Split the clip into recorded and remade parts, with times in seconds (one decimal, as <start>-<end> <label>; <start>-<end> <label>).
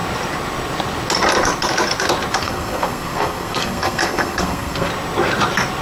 0.0-2.4 recorded; 2.4-4.9 remade; 4.9-5.8 recorded